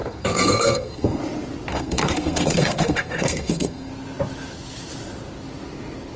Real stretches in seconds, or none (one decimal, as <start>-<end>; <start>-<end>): 1.2-1.7; 3.9-6.2